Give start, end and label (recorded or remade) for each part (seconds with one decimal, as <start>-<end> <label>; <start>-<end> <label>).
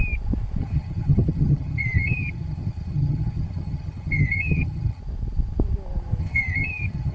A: 0.0-0.6 recorded; 0.6-5.0 remade; 5.0-6.2 recorded; 6.2-7.1 remade